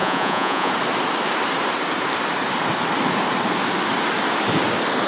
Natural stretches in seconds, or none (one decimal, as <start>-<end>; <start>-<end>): 0.7-5.1